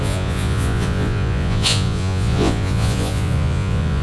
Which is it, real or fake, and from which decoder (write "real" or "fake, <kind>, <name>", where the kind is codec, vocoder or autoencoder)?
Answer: fake, vocoder, Vocos